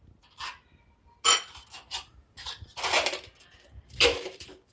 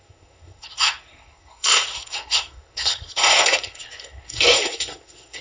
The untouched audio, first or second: first